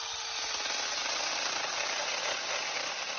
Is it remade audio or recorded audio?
recorded